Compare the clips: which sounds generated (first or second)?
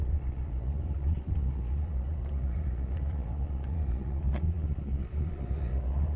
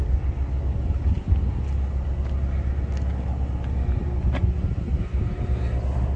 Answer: first